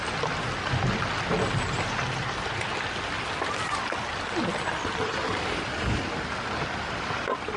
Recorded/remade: recorded